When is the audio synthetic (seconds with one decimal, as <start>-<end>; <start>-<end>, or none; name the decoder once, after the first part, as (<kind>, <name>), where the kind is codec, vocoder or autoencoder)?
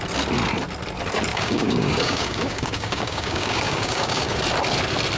1.3-4.4 (codec, DAC)